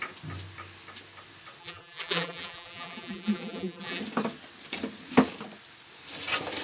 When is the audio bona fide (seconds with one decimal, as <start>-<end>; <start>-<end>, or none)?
0.0-1.6; 4.0-6.6